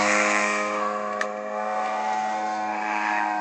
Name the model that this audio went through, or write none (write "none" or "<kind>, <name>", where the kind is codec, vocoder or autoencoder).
codec, SNAC